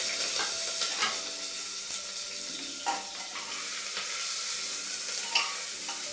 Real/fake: real